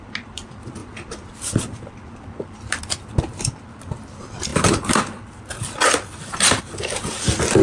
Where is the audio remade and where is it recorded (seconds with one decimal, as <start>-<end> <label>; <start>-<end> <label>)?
0.0-7.6 recorded